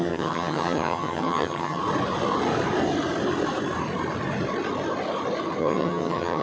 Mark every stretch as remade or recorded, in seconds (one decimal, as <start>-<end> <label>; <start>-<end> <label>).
0.0-1.8 remade; 1.8-5.6 recorded; 5.6-6.4 remade